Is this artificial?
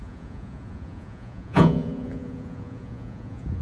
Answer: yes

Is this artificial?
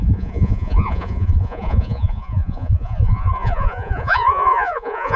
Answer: yes